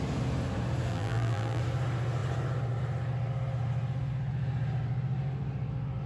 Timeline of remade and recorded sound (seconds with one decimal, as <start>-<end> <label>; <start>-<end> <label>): 0.0-0.9 recorded; 0.9-1.6 remade; 1.6-6.1 recorded